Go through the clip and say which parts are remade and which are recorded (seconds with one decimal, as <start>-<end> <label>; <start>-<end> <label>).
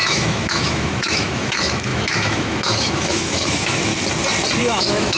0.0-3.9 remade; 3.9-4.6 recorded; 4.6-5.2 remade